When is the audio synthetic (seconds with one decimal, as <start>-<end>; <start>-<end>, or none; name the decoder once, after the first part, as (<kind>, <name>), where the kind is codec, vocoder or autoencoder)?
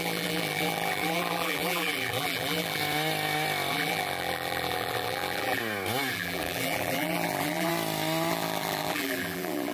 0.0-2.8 (vocoder, BigVGAN v2); 3.7-5.6; 6.1-7.7; 8.3-9.7